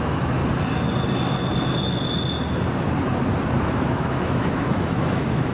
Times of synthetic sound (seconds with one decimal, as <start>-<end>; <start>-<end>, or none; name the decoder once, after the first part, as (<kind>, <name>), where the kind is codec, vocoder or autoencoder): 0.0-0.4 (autoencoder, DAC-VAE); 3.7-5.5